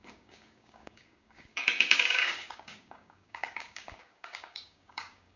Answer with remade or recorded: remade